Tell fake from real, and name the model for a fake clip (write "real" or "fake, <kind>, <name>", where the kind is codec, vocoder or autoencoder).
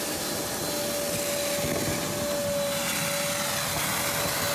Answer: real